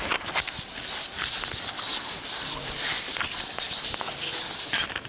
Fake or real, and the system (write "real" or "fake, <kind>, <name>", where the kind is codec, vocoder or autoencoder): real